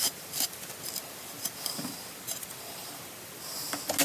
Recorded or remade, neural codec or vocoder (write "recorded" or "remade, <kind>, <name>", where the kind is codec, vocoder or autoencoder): recorded